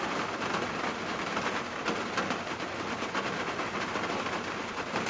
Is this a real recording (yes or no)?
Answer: yes